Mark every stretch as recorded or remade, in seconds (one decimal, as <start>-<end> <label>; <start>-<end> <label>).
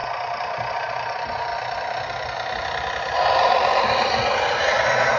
0.0-0.7 recorded; 0.7-1.5 remade; 1.5-4.6 recorded; 4.6-5.2 remade